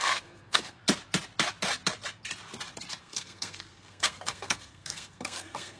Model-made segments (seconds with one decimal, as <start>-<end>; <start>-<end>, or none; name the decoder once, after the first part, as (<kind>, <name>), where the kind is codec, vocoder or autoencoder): 0.0-0.8 (codec, SNAC); 3.0-5.8